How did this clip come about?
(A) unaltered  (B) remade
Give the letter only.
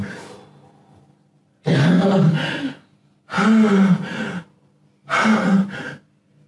A